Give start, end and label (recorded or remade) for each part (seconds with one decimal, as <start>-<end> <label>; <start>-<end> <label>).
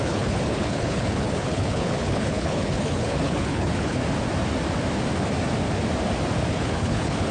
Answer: 0.0-4.0 remade; 4.0-6.5 recorded; 6.5-7.3 remade